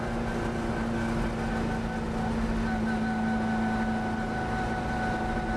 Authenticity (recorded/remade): recorded